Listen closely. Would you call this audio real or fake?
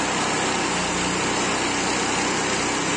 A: real